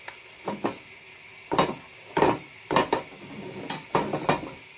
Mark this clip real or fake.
real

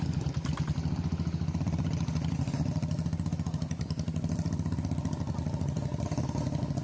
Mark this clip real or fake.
real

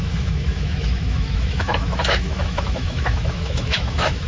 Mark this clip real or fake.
fake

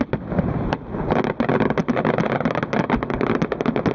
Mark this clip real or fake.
real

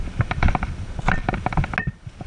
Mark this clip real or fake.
real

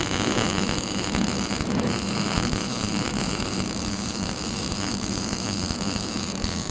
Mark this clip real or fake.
fake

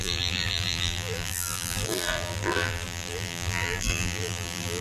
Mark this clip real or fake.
fake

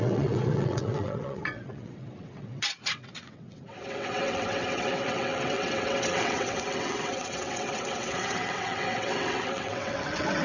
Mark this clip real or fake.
fake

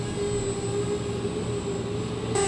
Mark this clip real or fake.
real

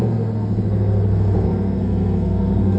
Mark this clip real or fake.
fake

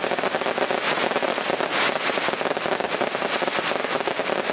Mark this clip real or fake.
fake